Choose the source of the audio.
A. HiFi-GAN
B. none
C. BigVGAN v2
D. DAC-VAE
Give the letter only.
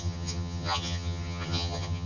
A